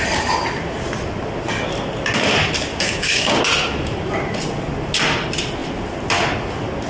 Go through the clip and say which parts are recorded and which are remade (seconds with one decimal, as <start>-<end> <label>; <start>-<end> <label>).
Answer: 0.0-2.7 recorded; 2.7-3.4 remade; 3.4-6.9 recorded